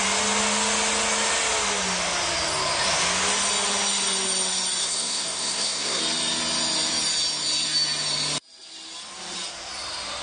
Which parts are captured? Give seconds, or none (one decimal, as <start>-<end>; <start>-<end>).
0.0-4.8; 6.0-10.2